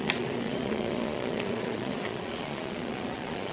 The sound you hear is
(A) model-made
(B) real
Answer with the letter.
A